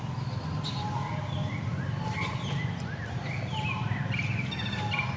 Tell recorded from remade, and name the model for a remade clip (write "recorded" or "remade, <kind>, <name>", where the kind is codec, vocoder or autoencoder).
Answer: recorded